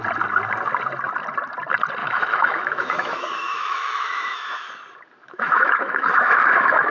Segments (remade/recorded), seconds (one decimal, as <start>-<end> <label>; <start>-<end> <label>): 0.0-2.0 recorded; 2.0-4.7 remade; 4.7-5.2 recorded; 5.2-6.9 remade